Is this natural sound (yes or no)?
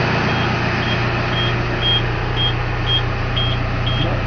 yes